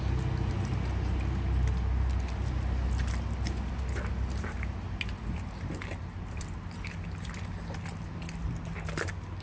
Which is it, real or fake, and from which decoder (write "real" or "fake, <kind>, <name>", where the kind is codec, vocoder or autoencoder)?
real